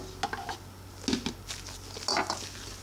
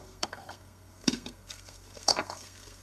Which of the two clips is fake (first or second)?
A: second